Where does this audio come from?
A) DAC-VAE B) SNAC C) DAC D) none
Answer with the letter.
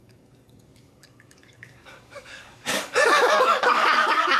C